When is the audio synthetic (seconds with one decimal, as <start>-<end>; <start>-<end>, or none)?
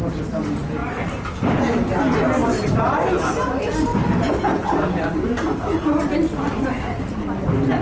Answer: none